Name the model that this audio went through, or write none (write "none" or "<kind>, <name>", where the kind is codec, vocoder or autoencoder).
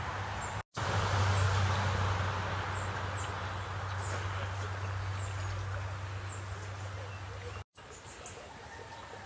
none